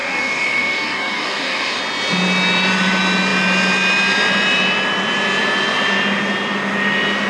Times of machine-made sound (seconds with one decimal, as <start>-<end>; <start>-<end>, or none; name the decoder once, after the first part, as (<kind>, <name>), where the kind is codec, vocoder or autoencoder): 0.0-1.8 (codec, DAC)